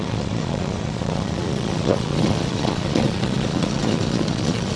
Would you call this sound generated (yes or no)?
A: yes